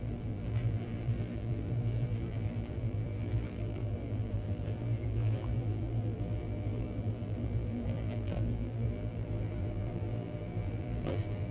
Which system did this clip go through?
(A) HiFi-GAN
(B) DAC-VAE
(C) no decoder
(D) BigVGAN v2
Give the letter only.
D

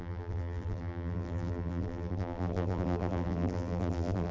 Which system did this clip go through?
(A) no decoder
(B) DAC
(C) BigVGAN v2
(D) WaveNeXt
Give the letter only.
C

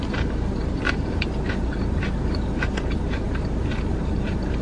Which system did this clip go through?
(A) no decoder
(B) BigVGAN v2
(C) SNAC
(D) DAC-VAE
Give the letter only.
B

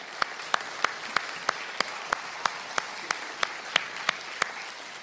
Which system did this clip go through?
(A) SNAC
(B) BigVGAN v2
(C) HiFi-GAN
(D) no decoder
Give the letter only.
D